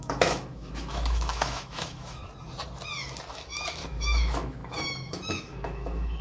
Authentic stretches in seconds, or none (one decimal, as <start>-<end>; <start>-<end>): 2.2-3.3